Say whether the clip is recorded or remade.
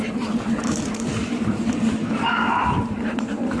remade